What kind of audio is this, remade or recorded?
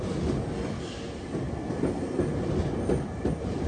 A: recorded